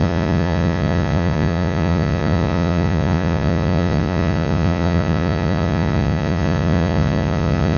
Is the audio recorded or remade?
remade